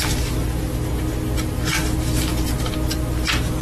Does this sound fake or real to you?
real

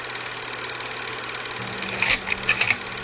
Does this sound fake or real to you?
real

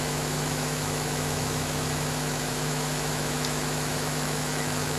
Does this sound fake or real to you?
fake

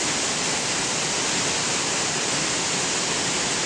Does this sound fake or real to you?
real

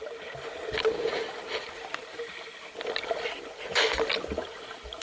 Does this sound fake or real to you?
real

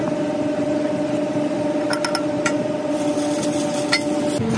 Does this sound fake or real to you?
real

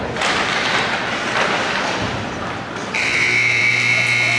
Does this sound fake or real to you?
fake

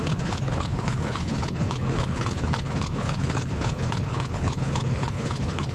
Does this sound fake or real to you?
fake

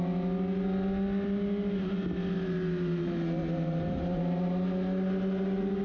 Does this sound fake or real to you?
real